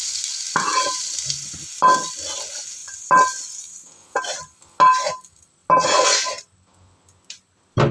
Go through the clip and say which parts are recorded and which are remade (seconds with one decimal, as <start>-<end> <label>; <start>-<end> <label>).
0.0-7.9 recorded